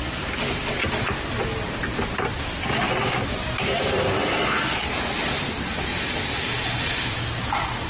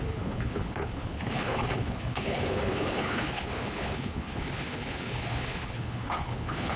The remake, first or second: second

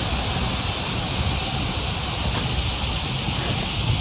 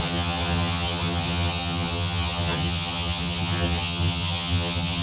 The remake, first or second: second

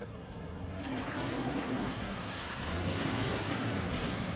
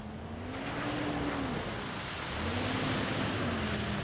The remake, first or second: first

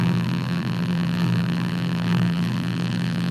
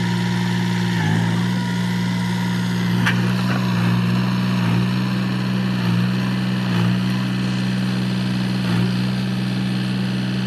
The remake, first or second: first